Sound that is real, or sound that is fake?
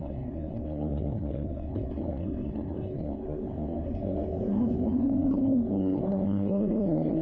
fake